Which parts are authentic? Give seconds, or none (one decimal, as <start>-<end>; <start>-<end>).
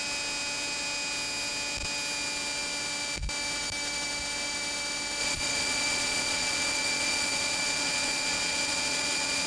0.0-5.2